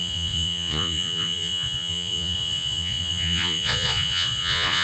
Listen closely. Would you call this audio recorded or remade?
remade